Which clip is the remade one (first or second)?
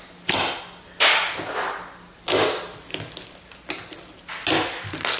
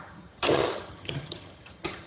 second